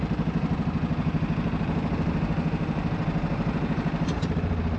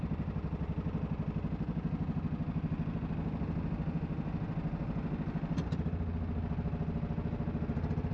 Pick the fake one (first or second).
first